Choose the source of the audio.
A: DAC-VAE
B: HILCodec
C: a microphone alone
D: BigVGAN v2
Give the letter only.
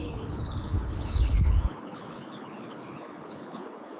B